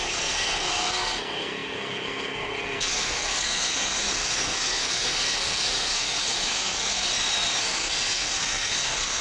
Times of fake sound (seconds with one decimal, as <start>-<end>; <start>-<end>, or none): 0.0-7.1; 7.6-9.2